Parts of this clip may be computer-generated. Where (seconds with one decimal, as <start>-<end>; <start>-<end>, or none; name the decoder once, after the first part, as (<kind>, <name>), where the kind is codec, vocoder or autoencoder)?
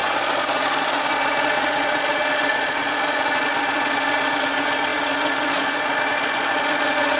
0.0-7.2 (vocoder, Vocos)